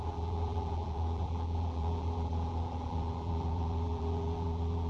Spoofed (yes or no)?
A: yes